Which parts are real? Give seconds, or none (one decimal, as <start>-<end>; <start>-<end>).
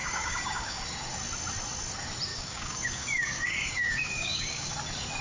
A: 0.8-2.3; 4.7-5.2